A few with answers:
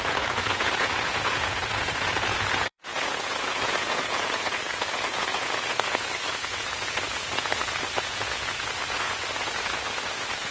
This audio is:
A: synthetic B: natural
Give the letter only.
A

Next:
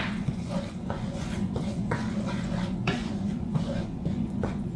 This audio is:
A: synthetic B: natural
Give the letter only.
A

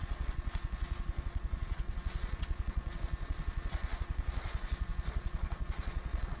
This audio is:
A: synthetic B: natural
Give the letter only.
A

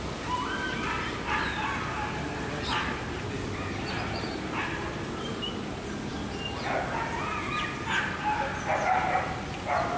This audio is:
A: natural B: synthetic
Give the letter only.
A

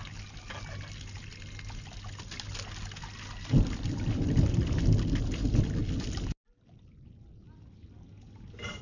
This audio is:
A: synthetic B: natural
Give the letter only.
B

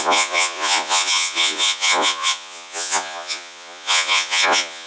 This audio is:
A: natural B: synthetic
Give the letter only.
B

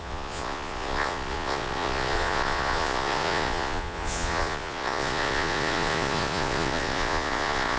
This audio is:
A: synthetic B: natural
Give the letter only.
A